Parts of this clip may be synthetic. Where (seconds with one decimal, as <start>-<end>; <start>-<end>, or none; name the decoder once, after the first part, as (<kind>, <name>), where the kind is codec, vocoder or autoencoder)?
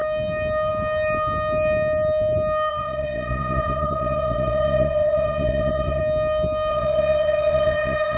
2.7-6.0 (vocoder, WaveNeXt); 6.7-8.2